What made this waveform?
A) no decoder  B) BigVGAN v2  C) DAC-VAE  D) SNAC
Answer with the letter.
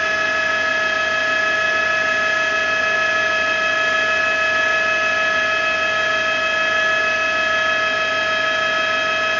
A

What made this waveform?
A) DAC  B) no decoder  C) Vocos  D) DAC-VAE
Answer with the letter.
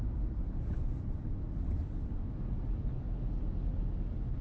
B